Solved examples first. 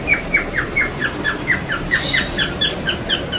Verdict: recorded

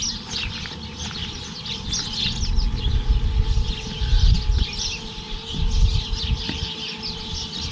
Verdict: recorded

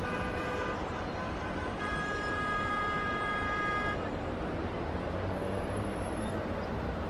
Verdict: remade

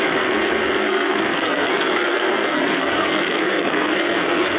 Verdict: remade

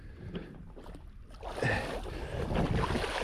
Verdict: recorded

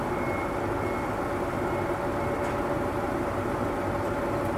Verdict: recorded